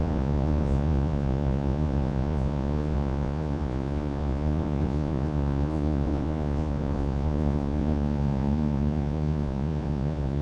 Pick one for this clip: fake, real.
fake